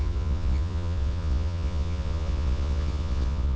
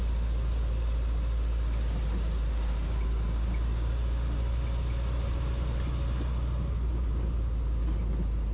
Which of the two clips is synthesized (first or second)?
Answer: first